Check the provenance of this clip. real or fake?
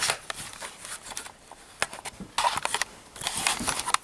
real